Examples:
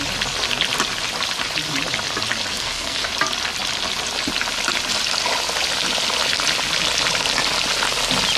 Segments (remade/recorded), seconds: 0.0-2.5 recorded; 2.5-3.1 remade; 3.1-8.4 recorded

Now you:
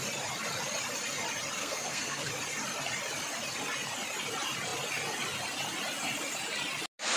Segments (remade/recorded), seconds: 0.0-1.6 recorded; 1.6-2.3 remade; 2.3-7.2 recorded

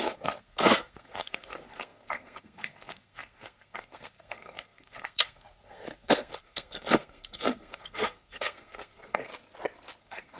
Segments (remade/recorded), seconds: 0.0-9.3 remade; 9.3-10.0 recorded; 10.0-10.4 remade

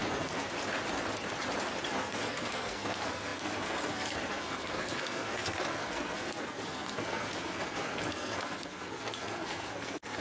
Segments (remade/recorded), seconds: 0.0-0.5 remade; 0.5-1.9 recorded; 1.9-10.2 remade